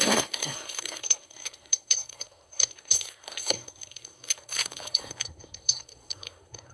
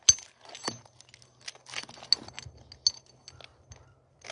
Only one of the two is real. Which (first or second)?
second